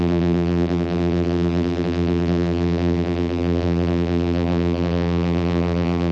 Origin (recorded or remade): remade